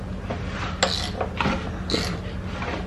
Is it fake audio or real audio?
real